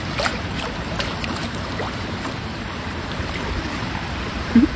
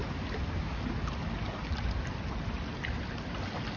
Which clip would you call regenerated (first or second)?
first